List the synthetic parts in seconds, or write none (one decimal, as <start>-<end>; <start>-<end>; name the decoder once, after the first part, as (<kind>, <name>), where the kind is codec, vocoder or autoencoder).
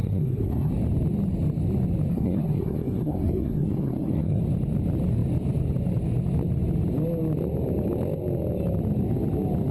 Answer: 0.0-0.7 (codec, SNAC); 2.1-4.4